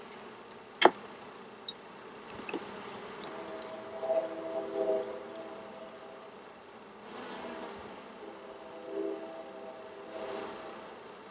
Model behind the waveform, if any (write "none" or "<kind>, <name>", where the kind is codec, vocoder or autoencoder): none